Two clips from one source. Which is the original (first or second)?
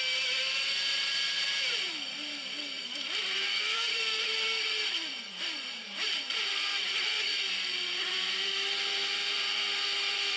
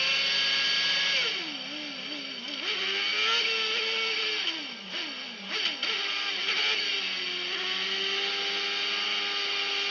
second